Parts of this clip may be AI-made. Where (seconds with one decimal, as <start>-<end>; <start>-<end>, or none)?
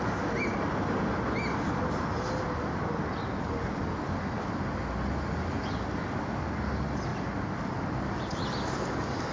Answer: none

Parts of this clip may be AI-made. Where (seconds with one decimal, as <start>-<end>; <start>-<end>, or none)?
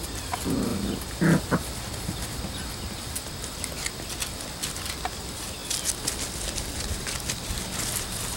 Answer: none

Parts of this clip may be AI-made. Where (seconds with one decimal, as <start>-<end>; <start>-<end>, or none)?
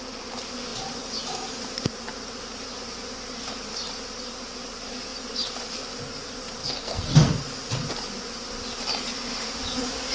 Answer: 6.6-7.4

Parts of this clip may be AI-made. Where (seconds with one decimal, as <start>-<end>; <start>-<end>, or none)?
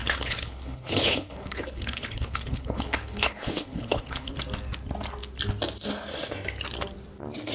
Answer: 0.0-4.3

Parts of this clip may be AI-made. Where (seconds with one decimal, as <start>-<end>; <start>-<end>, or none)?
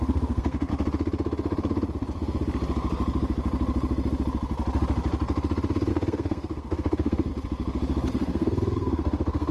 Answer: 0.0-0.7; 5.9-7.3; 8.1-9.5